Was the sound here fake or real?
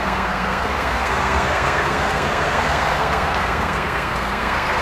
fake